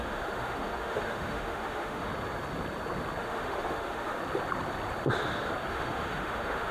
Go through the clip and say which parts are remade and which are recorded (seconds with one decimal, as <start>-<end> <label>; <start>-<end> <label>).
0.0-2.1 remade; 2.1-3.2 recorded; 3.2-4.2 remade; 4.2-5.7 recorded; 5.7-6.7 remade